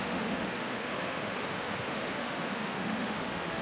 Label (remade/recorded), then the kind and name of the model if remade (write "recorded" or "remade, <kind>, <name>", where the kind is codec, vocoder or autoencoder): remade, autoencoder, DAC-VAE